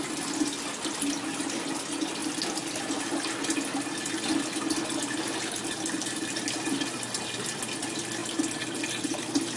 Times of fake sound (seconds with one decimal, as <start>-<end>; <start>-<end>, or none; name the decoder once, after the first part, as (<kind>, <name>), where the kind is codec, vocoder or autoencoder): none